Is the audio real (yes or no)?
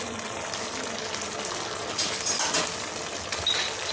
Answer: yes